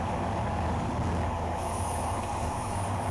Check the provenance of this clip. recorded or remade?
remade